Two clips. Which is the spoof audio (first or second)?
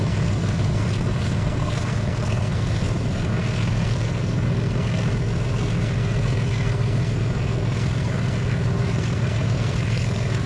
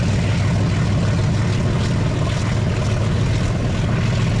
first